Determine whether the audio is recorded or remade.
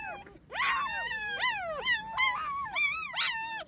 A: recorded